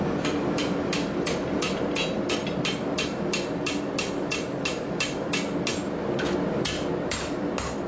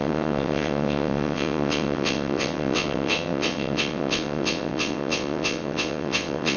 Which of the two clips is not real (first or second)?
second